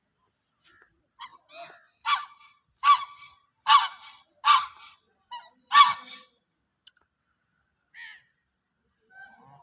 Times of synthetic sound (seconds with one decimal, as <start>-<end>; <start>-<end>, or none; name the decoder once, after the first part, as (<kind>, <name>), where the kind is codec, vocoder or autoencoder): none